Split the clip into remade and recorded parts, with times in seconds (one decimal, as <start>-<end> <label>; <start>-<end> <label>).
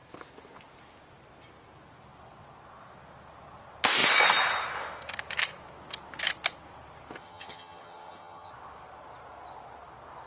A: 0.0-7.2 recorded; 7.2-8.5 remade; 8.5-10.3 recorded